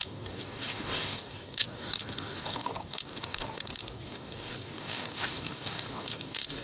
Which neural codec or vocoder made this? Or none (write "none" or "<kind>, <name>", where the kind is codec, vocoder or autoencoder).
codec, DAC